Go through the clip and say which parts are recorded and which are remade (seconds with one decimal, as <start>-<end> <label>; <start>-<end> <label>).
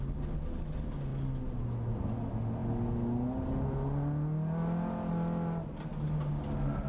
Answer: 0.0-6.9 recorded